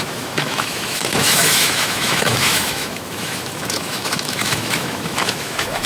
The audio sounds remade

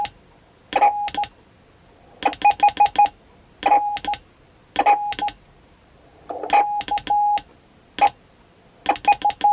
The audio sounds recorded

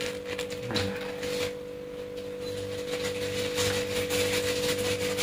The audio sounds recorded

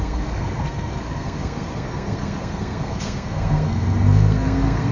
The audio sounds remade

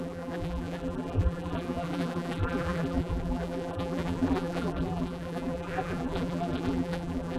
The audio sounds remade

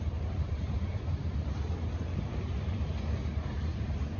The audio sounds remade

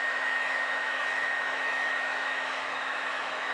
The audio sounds remade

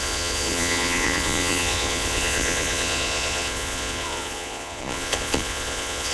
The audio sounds remade